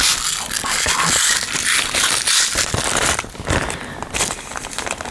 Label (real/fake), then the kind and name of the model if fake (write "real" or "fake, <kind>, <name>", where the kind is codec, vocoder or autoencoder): real